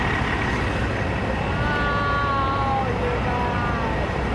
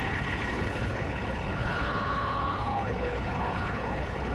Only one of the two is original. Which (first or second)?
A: first